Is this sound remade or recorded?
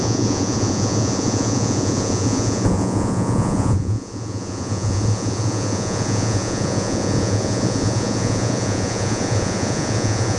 remade